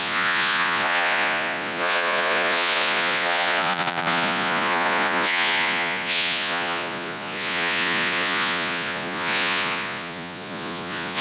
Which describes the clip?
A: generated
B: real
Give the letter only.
A